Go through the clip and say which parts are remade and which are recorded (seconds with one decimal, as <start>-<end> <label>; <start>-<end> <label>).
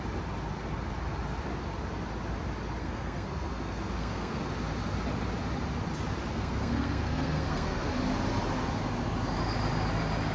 0.0-2.8 recorded; 2.8-4.5 remade; 4.5-6.3 recorded; 6.3-7.9 remade; 7.9-10.3 recorded